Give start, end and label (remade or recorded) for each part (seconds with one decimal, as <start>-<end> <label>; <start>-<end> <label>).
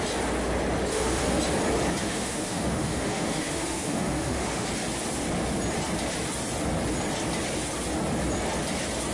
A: 0.0-0.9 recorded; 0.9-1.4 remade; 1.4-2.0 recorded; 2.0-4.7 remade; 4.7-9.1 recorded